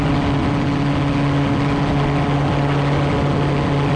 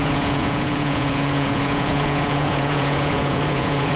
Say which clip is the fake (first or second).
second